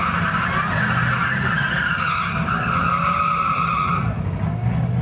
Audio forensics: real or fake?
real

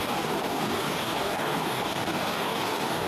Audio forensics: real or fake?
fake